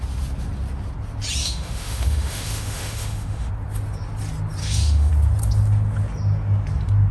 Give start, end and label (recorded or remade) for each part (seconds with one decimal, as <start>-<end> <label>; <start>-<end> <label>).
0.0-1.4 recorded; 1.4-3.5 remade; 3.5-4.6 recorded; 4.6-5.1 remade; 5.1-7.1 recorded